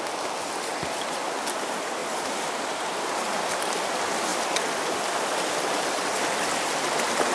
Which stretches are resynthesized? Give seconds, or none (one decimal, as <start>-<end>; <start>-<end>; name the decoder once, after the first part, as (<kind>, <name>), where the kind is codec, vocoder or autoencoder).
none